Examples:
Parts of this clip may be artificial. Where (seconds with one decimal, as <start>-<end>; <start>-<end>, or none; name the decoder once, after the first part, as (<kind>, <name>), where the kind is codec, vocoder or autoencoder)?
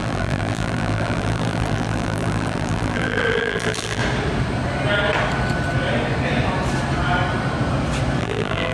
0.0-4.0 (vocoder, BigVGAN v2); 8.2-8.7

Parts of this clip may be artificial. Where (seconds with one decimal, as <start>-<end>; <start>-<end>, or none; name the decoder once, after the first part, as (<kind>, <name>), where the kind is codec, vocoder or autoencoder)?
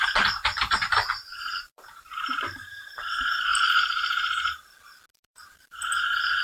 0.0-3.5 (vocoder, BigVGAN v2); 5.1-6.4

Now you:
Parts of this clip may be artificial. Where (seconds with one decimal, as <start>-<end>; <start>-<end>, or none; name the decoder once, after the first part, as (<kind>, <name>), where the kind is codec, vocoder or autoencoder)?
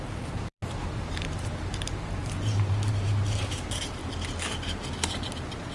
0.0-4.0 (vocoder, BigVGAN v2)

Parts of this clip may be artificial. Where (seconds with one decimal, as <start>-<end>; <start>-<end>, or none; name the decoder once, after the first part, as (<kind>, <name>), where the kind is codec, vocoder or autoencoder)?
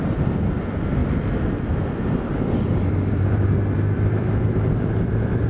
0.0-1.0 (vocoder, BigVGAN v2); 2.9-5.5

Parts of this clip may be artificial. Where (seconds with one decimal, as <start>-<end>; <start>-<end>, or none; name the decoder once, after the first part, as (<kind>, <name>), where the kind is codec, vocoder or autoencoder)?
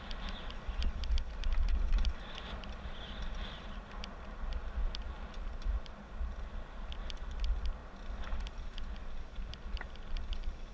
none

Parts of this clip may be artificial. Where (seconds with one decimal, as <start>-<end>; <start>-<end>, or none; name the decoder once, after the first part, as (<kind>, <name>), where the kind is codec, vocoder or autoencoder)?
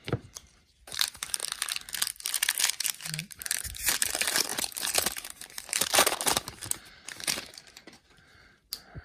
0.0-1.4 (vocoder, BigVGAN v2); 2.7-9.0